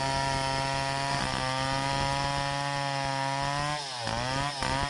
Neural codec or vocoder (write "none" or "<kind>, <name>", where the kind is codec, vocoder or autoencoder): none